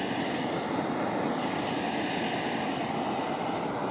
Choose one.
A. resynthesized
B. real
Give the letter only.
B